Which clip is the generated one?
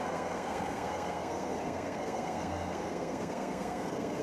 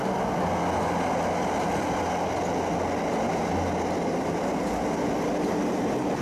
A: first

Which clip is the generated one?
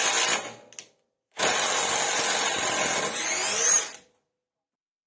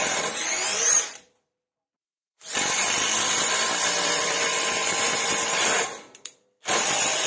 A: second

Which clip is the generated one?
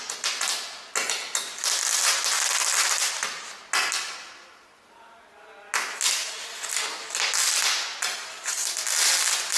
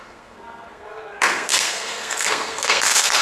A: second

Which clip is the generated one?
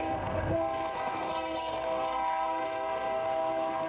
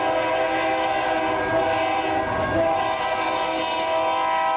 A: first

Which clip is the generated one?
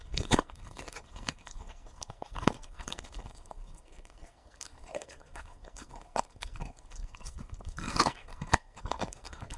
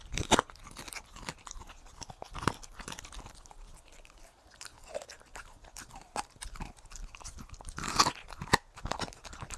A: first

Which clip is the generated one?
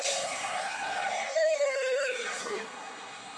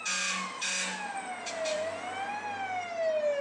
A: first